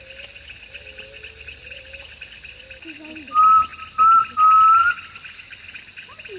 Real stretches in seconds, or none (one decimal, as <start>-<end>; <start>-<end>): 0.0-6.4